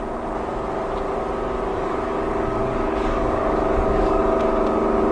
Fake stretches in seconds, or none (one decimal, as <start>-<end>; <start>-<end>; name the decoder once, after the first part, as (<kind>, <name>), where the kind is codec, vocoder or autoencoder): 1.7-4.2 (codec, DAC)